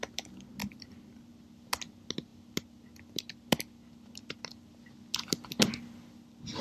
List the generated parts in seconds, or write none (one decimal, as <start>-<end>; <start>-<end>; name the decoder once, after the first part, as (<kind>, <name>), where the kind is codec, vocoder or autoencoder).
0.6-1.3 (vocoder, BigVGAN v2)